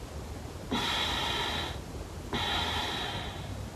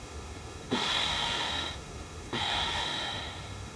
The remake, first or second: second